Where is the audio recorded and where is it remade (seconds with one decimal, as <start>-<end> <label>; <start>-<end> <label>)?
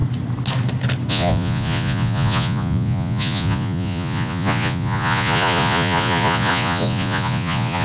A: 0.0-1.1 recorded; 1.1-7.8 remade